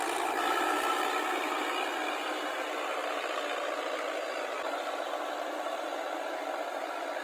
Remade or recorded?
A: recorded